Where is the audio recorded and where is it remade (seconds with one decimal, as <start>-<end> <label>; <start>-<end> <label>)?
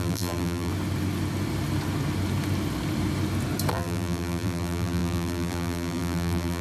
0.0-0.7 remade; 0.7-3.7 recorded; 3.7-6.6 remade